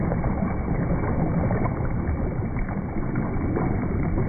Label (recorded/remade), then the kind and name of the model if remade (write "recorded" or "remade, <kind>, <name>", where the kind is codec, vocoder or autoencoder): recorded